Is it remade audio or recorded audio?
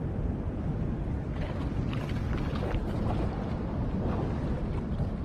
recorded